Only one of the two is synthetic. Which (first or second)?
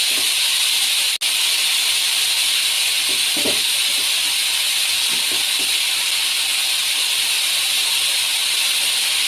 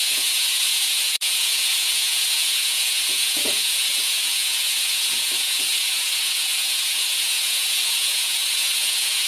second